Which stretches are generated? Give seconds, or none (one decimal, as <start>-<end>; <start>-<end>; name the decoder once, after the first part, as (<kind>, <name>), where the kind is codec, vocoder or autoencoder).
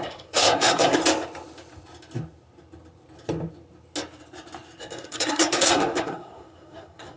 0.0-1.0 (codec, SNAC); 4.8-7.2